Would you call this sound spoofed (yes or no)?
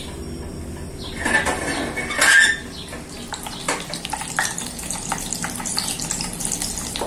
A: no